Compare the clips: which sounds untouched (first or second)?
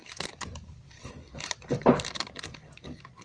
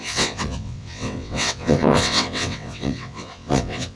first